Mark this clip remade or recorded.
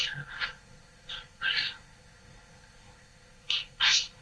remade